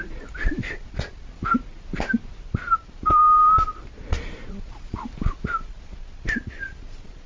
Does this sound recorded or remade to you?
recorded